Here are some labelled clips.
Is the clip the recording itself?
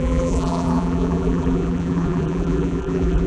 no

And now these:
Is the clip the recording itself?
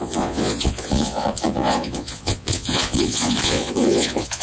no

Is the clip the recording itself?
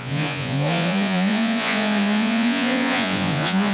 no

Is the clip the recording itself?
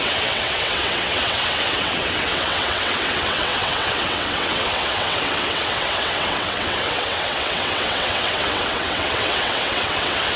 no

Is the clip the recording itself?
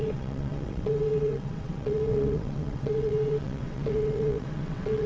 no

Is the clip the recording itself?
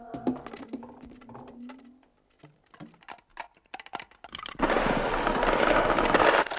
yes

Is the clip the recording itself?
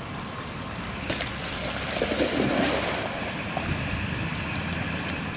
no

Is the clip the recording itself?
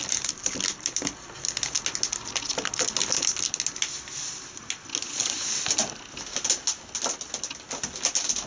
yes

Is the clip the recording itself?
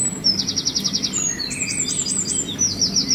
yes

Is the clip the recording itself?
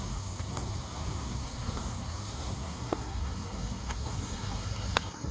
no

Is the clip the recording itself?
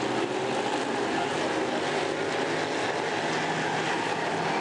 yes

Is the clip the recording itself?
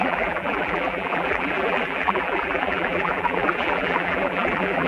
no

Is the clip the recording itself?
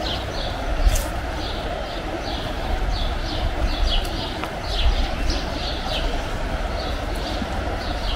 yes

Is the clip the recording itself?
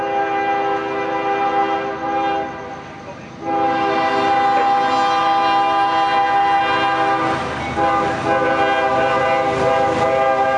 yes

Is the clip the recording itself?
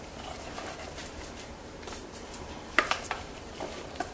no